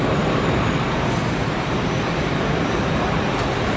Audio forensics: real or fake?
fake